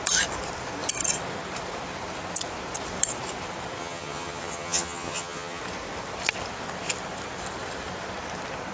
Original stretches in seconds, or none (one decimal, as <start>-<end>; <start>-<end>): 0.0-3.8; 5.6-8.7